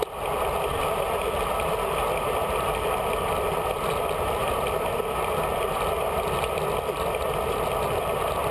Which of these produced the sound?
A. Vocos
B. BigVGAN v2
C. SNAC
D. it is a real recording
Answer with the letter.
D